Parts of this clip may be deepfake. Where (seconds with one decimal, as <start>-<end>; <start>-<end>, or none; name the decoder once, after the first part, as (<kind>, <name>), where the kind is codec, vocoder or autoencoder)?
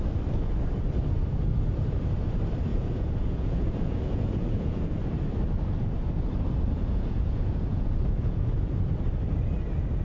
2.7-5.1 (vocoder, Vocos); 6.8-8.9